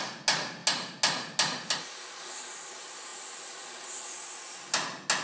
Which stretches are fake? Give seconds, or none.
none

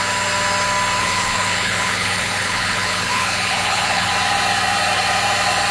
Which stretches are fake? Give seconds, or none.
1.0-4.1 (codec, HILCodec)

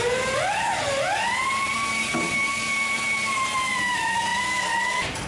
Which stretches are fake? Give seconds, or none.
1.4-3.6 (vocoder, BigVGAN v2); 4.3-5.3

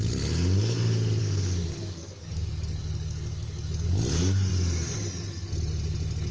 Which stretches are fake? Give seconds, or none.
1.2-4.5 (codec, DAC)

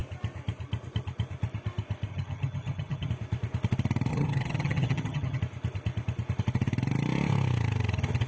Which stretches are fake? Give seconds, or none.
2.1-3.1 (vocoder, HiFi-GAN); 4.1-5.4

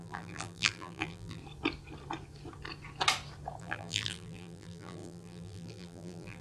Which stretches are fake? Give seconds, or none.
0.0-1.4 (vocoder, BigVGAN v2); 3.6-6.4